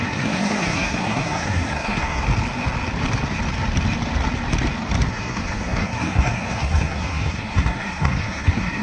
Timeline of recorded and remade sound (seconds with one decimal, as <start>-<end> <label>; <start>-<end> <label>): 0.0-2.2 remade; 2.2-5.1 recorded; 5.1-8.8 remade